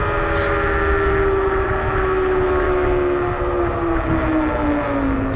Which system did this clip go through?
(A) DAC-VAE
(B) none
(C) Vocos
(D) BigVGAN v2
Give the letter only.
B